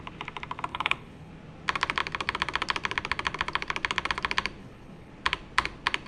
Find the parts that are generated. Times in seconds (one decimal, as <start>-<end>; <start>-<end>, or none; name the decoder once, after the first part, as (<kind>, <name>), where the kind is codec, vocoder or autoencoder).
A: 0.7-1.3 (codec, HILCodec); 4.6-5.1